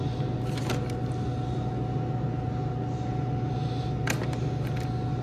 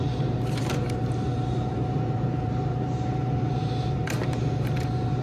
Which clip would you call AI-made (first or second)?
second